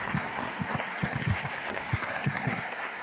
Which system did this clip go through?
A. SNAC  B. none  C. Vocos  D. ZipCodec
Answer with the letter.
A